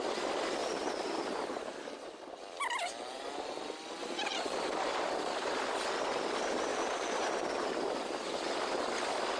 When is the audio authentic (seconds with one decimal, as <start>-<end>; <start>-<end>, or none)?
0.0-0.6; 2.0-4.0; 4.7-6.7; 8.3-9.4